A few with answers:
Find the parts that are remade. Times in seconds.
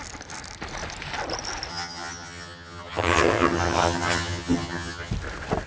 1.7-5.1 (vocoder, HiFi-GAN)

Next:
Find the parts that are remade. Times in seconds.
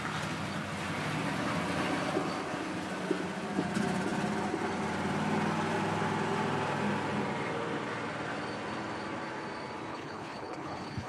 9.9-11.1 (codec, HILCodec)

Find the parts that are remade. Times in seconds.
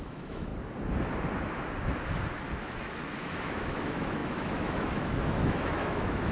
0.0-0.5 (autoencoder, DAC-VAE); 2.6-6.3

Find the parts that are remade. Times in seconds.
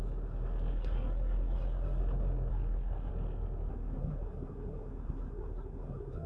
0.7-2.0 (codec, SNAC); 2.5-3.1; 3.7-6.3